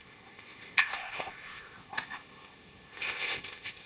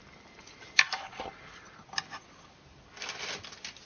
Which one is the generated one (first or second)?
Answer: first